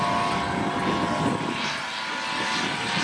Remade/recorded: recorded